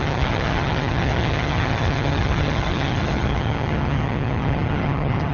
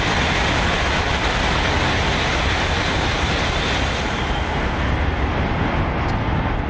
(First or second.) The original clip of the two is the second